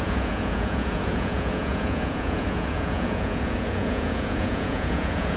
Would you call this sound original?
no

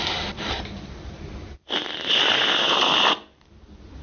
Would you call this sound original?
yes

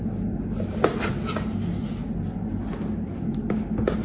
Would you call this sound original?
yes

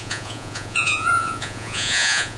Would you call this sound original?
no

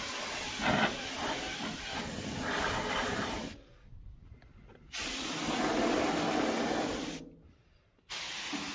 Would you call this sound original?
yes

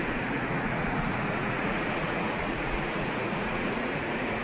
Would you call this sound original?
no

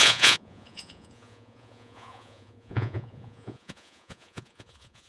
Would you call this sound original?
no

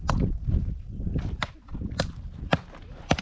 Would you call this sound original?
yes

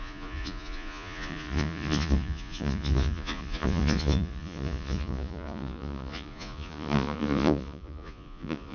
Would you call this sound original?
no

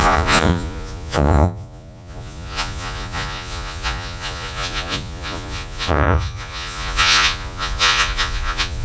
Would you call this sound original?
no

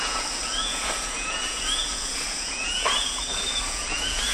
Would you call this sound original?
no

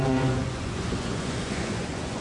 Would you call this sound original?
no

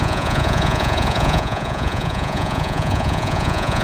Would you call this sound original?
no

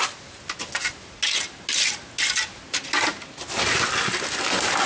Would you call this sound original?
yes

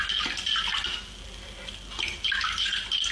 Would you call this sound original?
yes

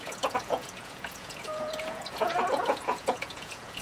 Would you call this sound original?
no